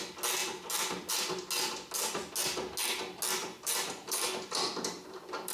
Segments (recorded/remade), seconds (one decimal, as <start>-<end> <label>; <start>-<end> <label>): 0.0-3.4 recorded; 3.4-5.5 remade